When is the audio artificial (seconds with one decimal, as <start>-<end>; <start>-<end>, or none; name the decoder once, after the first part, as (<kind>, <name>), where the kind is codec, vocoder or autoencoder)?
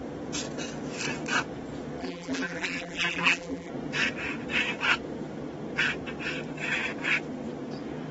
2.0-3.7 (vocoder, BigVGAN v2)